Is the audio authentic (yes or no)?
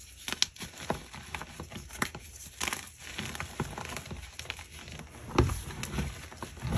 yes